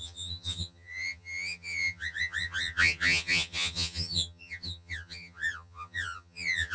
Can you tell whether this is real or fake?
fake